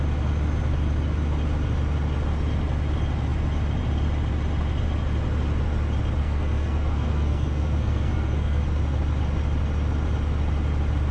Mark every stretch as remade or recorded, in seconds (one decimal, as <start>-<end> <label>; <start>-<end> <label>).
0.0-6.2 recorded; 6.2-8.6 remade; 8.6-11.1 recorded